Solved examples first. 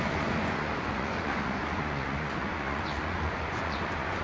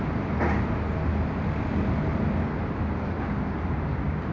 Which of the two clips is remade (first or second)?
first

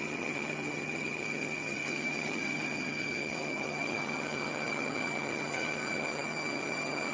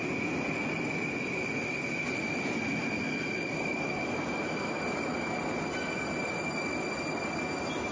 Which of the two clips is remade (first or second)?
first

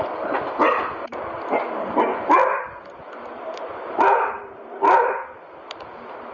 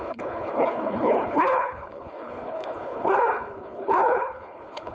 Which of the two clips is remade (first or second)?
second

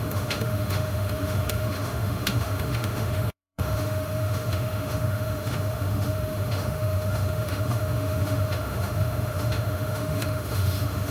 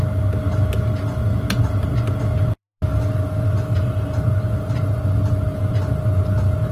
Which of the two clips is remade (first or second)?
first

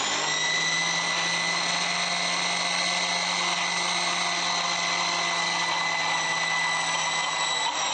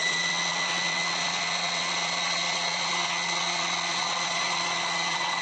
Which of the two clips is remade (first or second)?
second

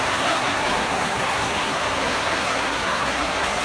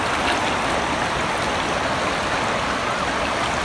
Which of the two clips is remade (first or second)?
first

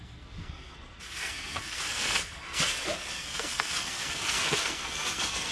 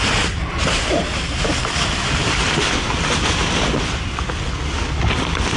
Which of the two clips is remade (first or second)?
first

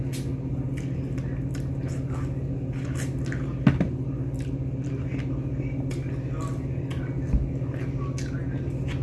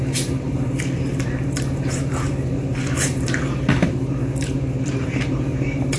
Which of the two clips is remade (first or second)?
second